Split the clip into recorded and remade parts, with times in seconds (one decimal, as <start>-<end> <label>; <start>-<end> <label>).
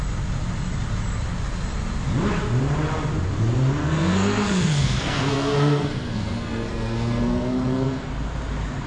0.0-3.8 recorded; 3.8-8.1 remade; 8.1-8.9 recorded